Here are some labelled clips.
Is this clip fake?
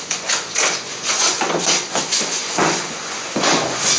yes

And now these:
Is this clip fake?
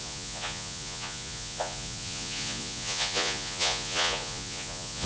yes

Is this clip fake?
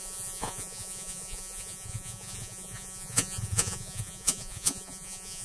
yes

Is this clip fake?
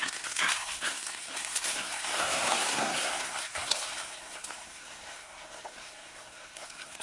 yes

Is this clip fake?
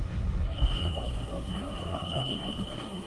yes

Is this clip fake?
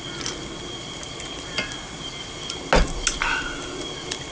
no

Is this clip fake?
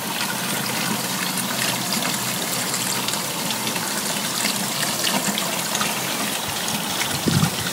no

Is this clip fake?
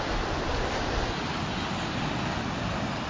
no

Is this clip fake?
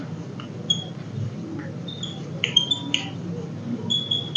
no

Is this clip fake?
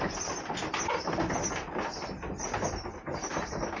no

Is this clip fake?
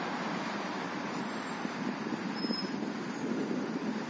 no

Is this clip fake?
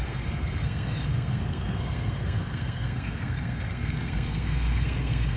yes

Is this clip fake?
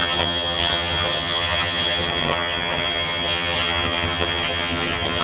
yes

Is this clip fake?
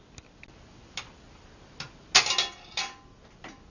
no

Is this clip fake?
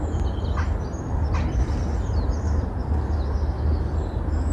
no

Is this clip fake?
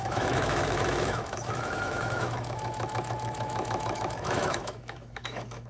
yes